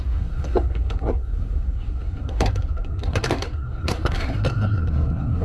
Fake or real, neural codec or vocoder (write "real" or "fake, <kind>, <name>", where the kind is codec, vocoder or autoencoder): fake, codec, SNAC